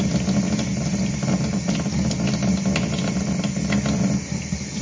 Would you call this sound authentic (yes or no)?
yes